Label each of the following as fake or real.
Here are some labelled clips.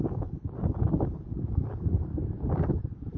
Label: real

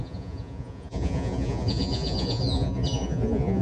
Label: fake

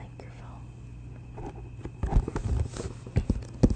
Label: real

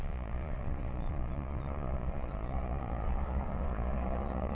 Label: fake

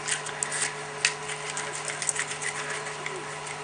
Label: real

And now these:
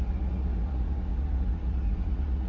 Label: fake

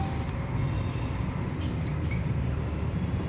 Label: real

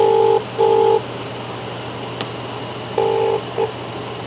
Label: real